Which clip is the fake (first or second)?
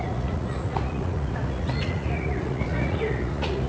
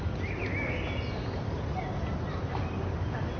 first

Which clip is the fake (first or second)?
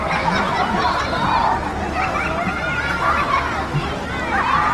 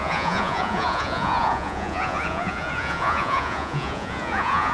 second